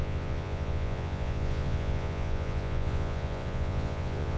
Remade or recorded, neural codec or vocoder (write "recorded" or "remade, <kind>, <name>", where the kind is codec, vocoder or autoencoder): remade, vocoder, Vocos